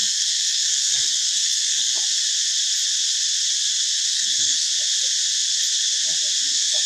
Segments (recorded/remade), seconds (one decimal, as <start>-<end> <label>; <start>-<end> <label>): 0.0-1.9 remade; 1.9-4.1 recorded; 4.1-4.7 remade; 4.7-6.5 recorded; 6.5-6.9 remade